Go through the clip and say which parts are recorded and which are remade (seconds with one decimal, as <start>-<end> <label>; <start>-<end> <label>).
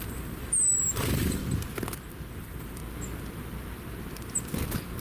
0.0-1.4 remade; 1.4-2.4 recorded; 2.4-2.8 remade; 2.8-5.0 recorded